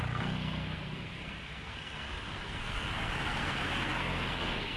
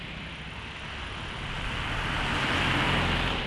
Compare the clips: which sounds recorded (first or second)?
second